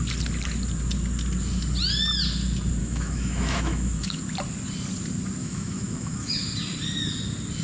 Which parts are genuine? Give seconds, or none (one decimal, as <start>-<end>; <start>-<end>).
0.0-2.8; 4.2-5.4; 6.3-7.6